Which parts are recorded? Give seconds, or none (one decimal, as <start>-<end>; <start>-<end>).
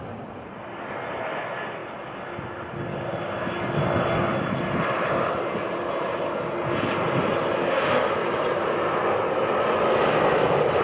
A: 0.0-7.6; 8.1-10.8